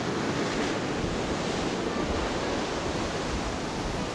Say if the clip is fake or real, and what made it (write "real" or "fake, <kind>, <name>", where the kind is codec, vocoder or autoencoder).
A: real